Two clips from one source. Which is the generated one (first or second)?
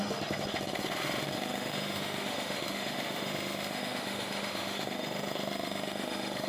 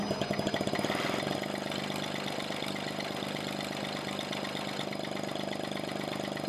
first